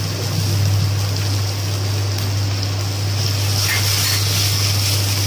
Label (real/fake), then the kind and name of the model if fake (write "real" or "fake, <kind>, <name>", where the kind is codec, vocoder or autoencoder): real